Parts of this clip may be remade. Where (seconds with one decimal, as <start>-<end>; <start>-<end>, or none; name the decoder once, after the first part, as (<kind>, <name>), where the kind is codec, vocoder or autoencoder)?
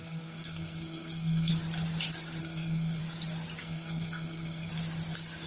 0.0-1.5 (codec, SNAC); 2.4-3.0; 3.6-4.7